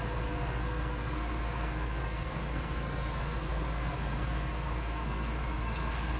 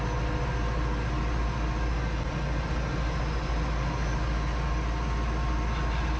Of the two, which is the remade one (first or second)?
first